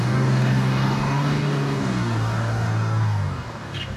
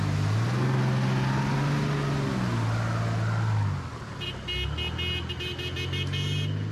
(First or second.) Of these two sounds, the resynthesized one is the first